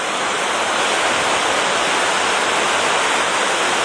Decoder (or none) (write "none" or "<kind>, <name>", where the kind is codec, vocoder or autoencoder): none